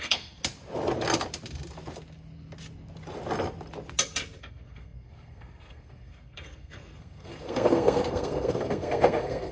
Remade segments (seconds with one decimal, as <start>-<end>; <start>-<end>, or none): 0.0-0.4; 4.4-9.5